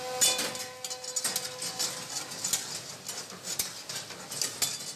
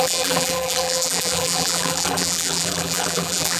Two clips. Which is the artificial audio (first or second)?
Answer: second